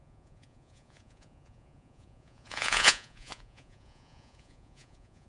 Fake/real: fake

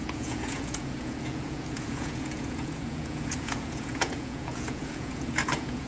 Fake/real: fake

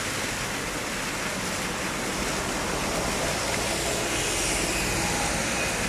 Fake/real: real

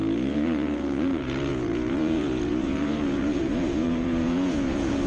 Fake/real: fake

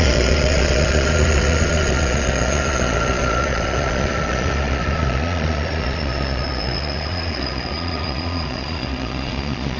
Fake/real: fake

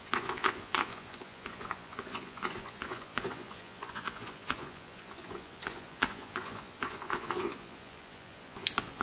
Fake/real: fake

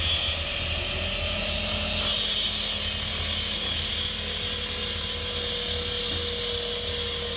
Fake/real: real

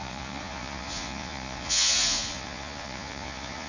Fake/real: fake